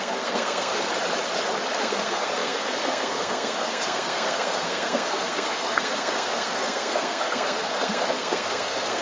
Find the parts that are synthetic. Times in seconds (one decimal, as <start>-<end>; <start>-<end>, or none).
0.0-0.7; 1.8-9.0